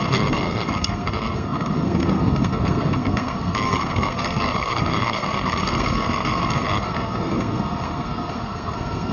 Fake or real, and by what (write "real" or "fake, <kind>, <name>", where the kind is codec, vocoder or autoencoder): fake, codec, SNAC